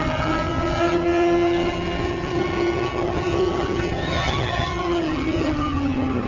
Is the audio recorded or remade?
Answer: remade